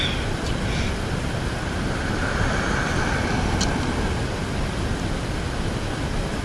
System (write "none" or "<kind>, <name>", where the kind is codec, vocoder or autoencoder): none